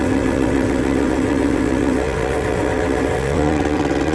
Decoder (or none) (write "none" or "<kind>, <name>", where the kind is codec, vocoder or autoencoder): vocoder, WaveNeXt